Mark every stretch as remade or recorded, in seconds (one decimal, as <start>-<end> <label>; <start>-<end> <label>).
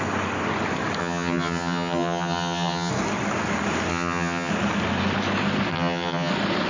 0.0-1.0 recorded; 1.0-2.9 remade; 2.9-3.9 recorded; 3.9-4.5 remade; 4.5-5.7 recorded; 5.7-6.3 remade; 6.3-6.7 recorded